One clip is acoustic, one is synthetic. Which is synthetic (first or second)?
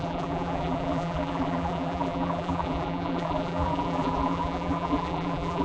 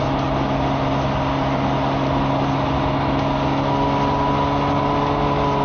first